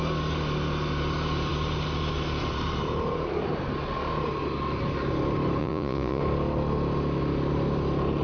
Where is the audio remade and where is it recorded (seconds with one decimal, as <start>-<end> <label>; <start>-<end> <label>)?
0.0-5.6 recorded; 5.6-6.2 remade; 6.2-8.2 recorded